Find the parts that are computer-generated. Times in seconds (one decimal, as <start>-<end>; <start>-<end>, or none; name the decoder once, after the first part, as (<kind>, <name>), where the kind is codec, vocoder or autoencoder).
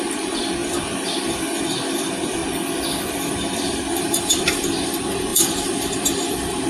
0.0-2.4 (vocoder, BigVGAN v2); 3.1-6.7